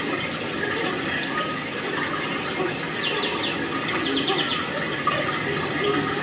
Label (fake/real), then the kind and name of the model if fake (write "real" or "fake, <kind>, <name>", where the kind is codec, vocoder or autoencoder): real